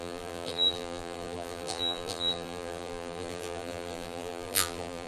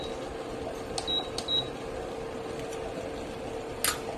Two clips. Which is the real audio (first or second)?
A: second